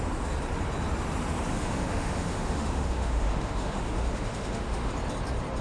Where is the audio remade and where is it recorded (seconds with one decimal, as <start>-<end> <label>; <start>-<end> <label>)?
0.0-1.5 recorded; 1.5-4.9 remade; 4.9-5.6 recorded